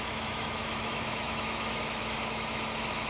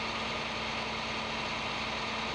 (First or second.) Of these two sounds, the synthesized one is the first